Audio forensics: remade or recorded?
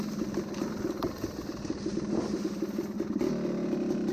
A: recorded